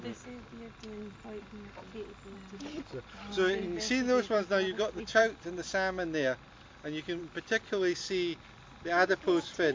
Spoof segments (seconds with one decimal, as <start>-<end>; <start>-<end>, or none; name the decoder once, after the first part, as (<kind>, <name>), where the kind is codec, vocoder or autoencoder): none